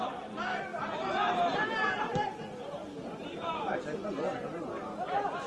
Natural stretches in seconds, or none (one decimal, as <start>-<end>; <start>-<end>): 0.0-5.5